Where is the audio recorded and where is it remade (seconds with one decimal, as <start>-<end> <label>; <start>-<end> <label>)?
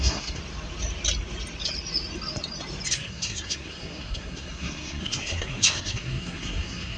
0.0-0.4 remade; 0.4-2.9 recorded; 2.9-7.0 remade